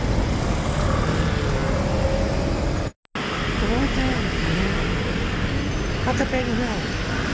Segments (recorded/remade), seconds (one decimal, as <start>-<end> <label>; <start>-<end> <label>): 0.0-7.3 recorded